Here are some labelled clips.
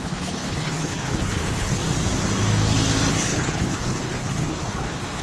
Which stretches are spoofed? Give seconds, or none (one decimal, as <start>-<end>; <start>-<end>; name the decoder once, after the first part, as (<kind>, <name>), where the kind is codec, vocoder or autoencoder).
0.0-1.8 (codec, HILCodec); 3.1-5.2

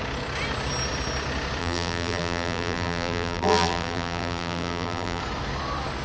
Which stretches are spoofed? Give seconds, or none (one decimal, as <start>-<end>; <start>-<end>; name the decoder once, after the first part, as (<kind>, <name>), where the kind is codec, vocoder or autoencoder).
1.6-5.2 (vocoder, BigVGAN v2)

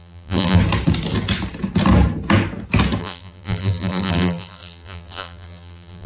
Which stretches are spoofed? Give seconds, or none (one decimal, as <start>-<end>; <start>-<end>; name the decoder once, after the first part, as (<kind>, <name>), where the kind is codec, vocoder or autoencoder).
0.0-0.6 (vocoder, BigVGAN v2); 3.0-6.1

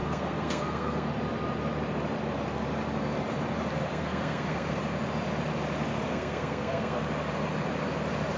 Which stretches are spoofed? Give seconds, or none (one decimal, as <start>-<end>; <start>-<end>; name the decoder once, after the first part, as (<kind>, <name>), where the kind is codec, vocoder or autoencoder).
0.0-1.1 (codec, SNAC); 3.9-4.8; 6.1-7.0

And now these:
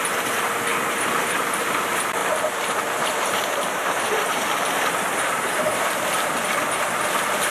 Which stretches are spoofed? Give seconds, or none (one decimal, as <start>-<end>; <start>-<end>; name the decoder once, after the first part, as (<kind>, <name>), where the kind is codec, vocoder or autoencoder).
2.2-5.6 (vocoder, BigVGAN v2)

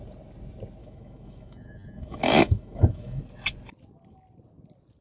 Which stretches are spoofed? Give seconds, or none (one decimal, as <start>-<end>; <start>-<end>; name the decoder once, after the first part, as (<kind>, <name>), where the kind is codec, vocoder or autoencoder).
0.8-3.2 (autoencoder, DAC-VAE)

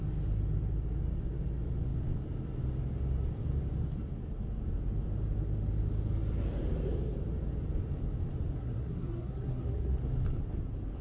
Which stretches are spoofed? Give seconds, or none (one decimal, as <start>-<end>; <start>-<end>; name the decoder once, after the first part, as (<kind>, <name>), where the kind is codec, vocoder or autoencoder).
8.6-10.0 (codec, SNAC)

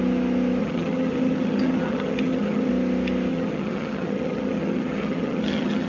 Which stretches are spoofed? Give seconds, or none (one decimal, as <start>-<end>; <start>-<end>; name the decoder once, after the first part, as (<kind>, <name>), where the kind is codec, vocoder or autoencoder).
0.6-2.7 (vocoder, HiFi-GAN); 3.3-5.9